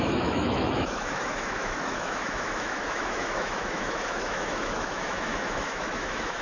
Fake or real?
fake